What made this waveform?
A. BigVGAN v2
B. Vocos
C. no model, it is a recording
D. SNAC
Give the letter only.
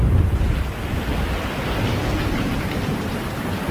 C